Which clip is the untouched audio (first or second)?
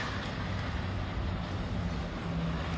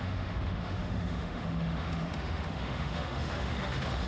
first